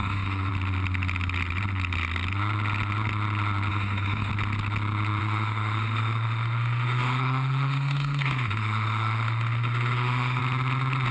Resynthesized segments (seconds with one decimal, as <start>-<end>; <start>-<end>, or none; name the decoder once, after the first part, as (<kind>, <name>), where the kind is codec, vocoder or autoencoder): 0.0-0.5 (autoencoder, DAC-VAE); 3.7-4.3; 5.2-10.4